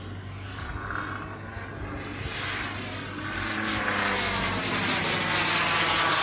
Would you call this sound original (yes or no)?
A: yes